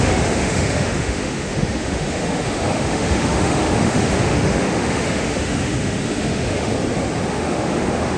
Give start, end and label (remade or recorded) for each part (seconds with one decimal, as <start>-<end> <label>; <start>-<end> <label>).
0.0-6.7 remade; 6.7-7.3 recorded; 7.3-8.2 remade